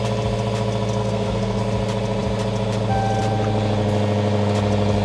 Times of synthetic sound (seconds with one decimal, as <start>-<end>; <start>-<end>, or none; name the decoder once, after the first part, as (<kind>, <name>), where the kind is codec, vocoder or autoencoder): 1.0-1.6 (codec, SNAC)

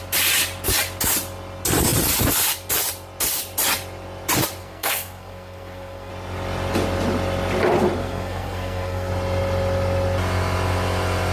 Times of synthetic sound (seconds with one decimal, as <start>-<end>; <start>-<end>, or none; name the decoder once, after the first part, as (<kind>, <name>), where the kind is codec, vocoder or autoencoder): 4.6-6.1 (codec, SNAC); 8.0-9.1

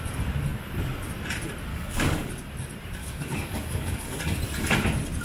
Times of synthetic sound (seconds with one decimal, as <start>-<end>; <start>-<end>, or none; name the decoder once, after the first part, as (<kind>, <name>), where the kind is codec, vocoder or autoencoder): 1.7-2.3 (codec, DAC); 3.0-4.4

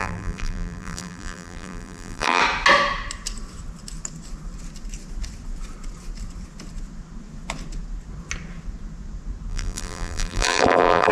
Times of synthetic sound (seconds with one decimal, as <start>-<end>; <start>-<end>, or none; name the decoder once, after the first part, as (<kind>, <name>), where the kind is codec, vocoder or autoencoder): 0.0-2.4 (vocoder, BigVGAN v2); 9.5-11.1

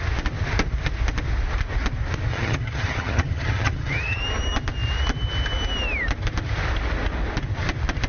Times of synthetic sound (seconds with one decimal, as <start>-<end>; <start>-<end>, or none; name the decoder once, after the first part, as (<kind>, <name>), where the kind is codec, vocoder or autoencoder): 2.3-4.2 (vocoder, HiFi-GAN)